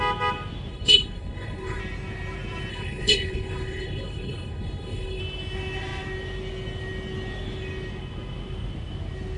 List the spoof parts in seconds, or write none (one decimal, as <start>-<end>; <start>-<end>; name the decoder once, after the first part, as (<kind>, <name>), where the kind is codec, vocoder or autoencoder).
0.7-1.8 (codec, HILCodec); 2.7-5.2